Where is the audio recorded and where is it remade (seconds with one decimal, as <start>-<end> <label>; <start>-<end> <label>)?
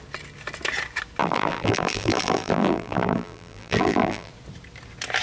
0.0-1.2 recorded; 1.2-4.3 remade; 4.3-5.2 recorded